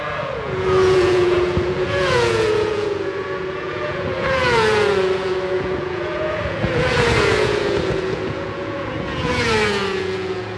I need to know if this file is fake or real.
fake